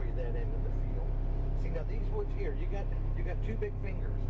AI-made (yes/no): no